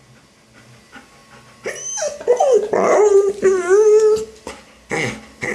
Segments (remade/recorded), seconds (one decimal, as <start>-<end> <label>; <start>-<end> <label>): 0.0-5.5 recorded